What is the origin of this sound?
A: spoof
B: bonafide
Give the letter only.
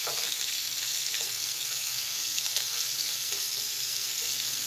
A